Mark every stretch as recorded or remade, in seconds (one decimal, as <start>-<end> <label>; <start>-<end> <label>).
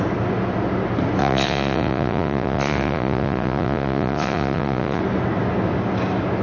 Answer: 0.0-1.2 recorded; 1.2-5.0 remade; 5.0-6.4 recorded